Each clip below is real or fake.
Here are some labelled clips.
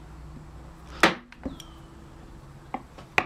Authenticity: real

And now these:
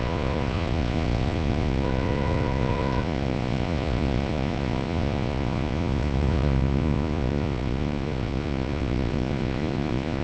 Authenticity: fake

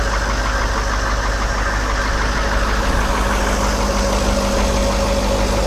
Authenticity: real